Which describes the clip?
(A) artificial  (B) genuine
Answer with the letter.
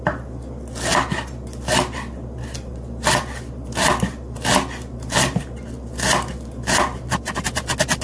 B